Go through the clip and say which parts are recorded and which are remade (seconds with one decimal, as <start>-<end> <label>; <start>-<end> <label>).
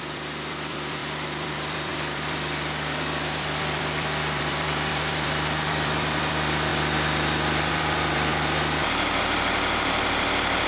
0.0-6.7 remade; 6.7-7.7 recorded; 7.7-8.3 remade; 8.3-9.2 recorded; 9.2-10.7 remade